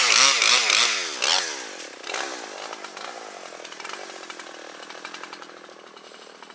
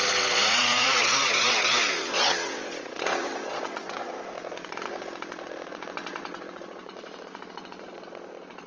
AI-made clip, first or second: second